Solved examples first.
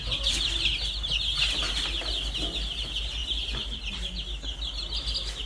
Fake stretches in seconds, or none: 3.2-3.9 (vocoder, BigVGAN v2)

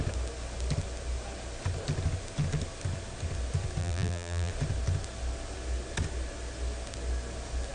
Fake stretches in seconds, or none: 3.8-4.5 (vocoder, BigVGAN v2)

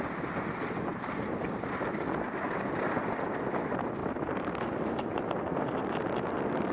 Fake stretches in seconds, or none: 4.0-5.1 (vocoder, BigVGAN v2)

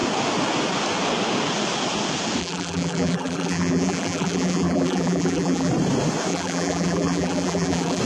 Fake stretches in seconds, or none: 2.4-5.7 (vocoder, BigVGAN v2); 6.3-8.0

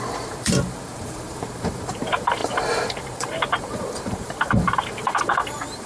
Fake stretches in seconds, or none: 0.0-5.9 (vocoder, BigVGAN v2)

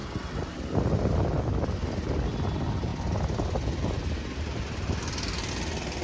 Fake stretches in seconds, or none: none

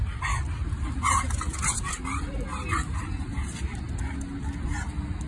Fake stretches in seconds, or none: 0.6-3.8 (vocoder, BigVGAN v2)

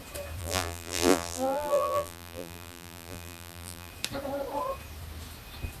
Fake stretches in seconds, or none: 0.4-3.9 (vocoder, BigVGAN v2)